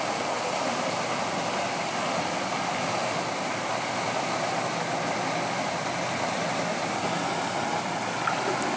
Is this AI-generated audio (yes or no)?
no